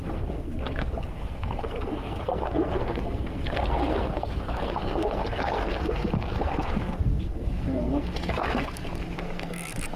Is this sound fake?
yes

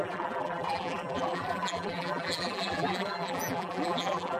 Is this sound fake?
yes